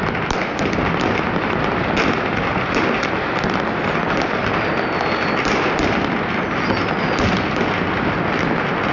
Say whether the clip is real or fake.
real